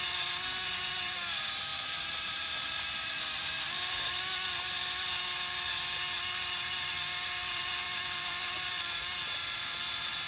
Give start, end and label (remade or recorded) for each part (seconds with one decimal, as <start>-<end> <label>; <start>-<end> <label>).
0.0-1.7 recorded; 1.7-5.2 remade; 5.2-7.4 recorded; 7.4-8.8 remade; 8.8-10.3 recorded